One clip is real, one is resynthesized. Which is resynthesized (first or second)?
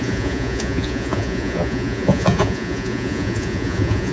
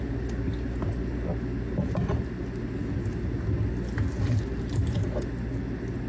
first